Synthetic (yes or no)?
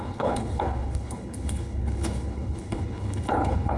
yes